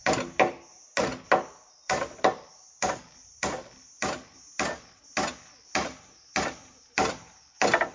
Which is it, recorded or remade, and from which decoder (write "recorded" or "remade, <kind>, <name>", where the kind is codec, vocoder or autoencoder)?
recorded